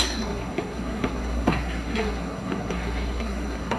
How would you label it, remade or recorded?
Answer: remade